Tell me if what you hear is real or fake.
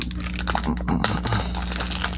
real